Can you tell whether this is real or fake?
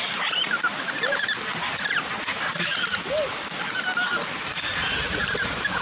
real